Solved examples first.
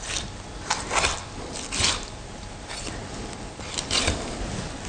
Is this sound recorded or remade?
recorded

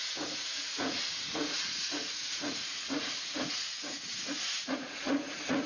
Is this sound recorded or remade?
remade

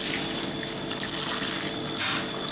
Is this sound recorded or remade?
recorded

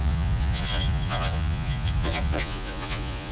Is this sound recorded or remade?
remade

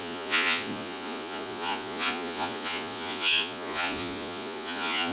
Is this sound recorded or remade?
remade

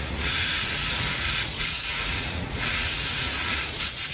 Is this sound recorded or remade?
remade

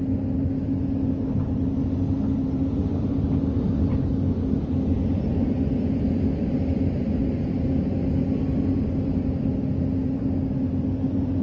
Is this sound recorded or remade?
recorded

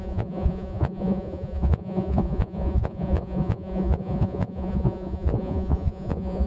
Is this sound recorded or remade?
remade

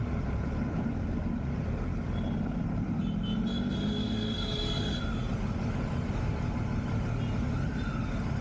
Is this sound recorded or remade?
recorded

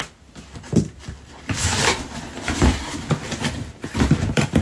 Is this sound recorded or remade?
recorded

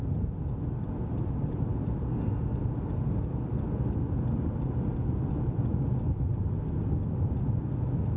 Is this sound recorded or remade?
recorded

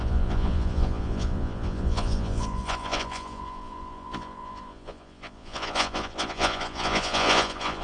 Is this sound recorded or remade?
remade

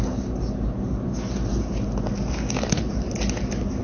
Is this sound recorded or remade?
recorded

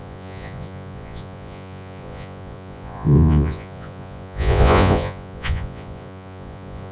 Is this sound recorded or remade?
remade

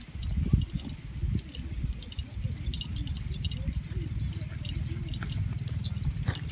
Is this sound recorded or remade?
recorded